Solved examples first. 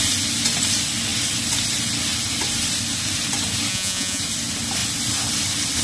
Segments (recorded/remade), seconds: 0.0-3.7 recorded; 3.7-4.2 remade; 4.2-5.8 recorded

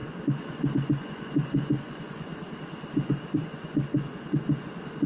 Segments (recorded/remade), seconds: 0.0-2.3 remade; 2.3-3.3 recorded; 3.3-5.1 remade

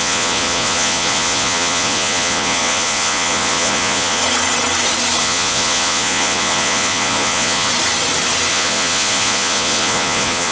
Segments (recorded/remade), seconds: 0.0-4.2 remade; 4.2-5.2 recorded; 5.2-7.7 remade; 7.7-8.5 recorded; 8.5-10.5 remade

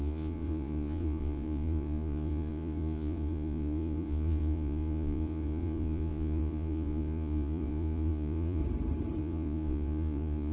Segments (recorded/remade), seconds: 0.0-8.6 remade; 8.6-9.2 recorded; 9.2-10.5 remade

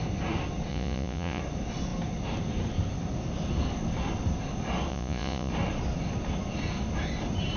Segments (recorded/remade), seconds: 0.0-0.7 recorded; 0.7-1.4 remade; 1.4-4.9 recorded; 4.9-5.5 remade; 5.5-7.6 recorded